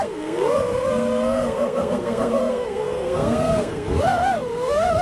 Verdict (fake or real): fake